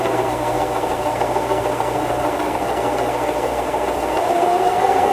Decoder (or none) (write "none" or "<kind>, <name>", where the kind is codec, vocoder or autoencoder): codec, SNAC